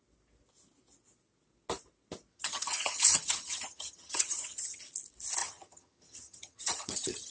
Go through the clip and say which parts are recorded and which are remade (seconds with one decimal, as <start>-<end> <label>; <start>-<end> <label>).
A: 0.0-2.3 recorded; 2.3-4.8 remade; 4.8-5.4 recorded; 5.4-7.3 remade